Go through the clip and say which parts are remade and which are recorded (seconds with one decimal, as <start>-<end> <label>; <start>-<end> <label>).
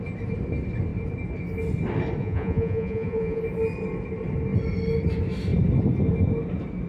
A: 0.0-2.2 recorded; 2.2-3.4 remade; 3.4-6.9 recorded